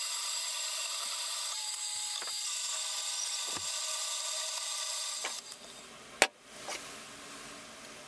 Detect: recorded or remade recorded